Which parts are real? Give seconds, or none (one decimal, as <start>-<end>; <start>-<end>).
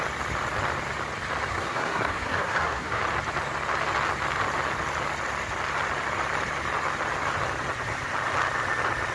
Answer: 0.0-1.5; 3.0-9.1